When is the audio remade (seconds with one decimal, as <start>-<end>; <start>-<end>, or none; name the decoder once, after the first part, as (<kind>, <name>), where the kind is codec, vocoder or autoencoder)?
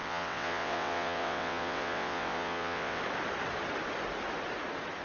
0.0-3.0 (vocoder, WaveNeXt)